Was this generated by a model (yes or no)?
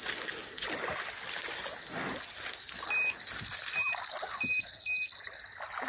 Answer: no